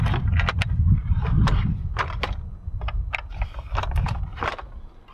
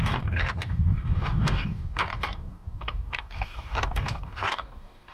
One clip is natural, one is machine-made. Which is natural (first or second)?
first